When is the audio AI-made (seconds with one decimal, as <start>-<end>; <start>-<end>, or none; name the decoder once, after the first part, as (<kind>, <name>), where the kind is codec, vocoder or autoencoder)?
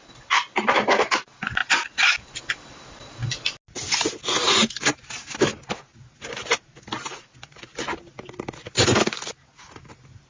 none